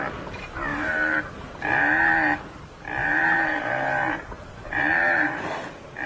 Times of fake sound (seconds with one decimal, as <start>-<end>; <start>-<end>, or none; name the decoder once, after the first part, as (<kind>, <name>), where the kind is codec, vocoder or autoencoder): 0.7-2.4 (vocoder, BigVGAN v2); 3.0-5.6